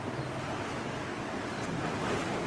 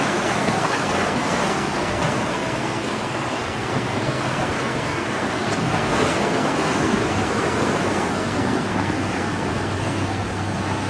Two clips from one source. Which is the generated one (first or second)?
second